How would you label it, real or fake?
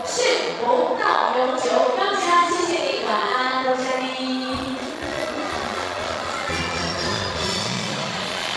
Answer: fake